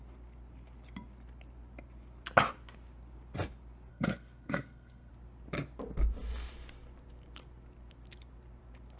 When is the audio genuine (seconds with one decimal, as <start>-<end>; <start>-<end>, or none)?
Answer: 0.0-3.9; 5.1-9.0